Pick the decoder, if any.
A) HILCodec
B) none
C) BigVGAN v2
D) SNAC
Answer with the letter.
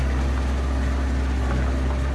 B